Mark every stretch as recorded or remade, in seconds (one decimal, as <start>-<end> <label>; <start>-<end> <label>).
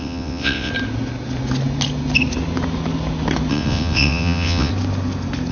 0.0-0.7 remade; 0.7-3.5 recorded; 3.5-4.7 remade; 4.7-5.5 recorded